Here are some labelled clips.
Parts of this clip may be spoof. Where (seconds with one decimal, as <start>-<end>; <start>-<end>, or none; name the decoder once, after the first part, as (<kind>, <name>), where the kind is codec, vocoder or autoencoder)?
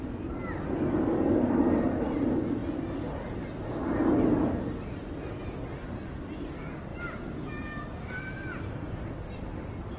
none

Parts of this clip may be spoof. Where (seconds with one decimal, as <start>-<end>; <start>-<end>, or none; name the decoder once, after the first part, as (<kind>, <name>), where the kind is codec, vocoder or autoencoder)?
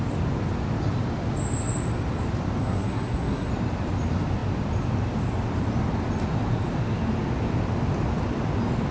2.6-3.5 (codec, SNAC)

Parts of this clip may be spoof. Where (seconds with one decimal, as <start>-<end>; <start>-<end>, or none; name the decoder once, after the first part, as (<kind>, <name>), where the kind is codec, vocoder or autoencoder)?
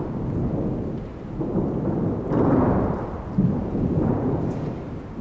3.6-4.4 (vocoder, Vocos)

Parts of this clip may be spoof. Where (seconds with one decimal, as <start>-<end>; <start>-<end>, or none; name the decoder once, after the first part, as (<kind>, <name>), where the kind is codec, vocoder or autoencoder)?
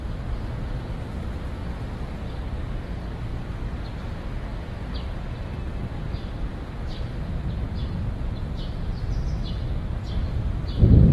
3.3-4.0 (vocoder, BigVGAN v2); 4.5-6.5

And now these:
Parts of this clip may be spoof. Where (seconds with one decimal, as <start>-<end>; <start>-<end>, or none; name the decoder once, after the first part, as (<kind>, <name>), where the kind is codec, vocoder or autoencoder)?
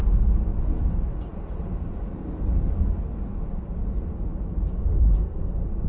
4.8-5.5 (codec, SNAC)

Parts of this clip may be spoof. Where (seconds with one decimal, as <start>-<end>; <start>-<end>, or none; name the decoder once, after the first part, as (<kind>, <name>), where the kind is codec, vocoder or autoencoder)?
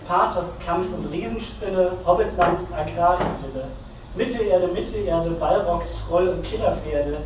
1.1-1.7 (codec, DAC); 5.9-6.8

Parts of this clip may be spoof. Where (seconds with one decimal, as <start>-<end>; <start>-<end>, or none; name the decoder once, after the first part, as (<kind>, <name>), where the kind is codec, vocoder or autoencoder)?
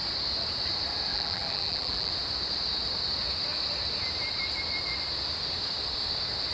1.1-2.1 (vocoder, BigVGAN v2)